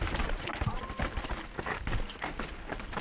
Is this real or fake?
real